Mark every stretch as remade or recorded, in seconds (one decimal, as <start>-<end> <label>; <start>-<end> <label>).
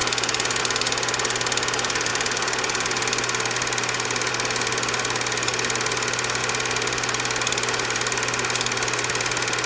0.0-0.6 remade; 0.6-9.7 recorded